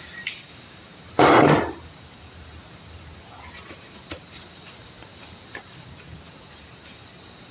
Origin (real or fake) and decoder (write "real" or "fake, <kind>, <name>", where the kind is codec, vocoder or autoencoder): fake, vocoder, BigVGAN v2